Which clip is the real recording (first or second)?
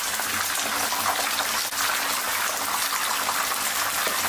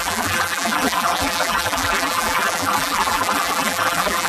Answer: first